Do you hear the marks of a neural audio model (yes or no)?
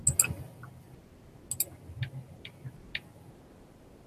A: no